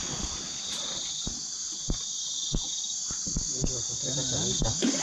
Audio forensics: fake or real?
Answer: real